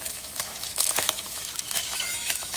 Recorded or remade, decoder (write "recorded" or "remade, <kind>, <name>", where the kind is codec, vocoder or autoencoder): remade, autoencoder, DAC-VAE